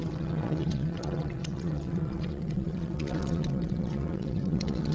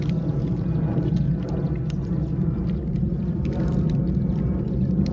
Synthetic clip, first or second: first